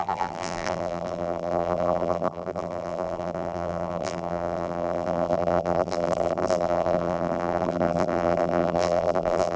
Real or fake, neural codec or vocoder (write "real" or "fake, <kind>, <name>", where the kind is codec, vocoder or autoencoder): fake, vocoder, BigVGAN v2